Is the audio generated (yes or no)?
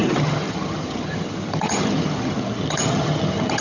yes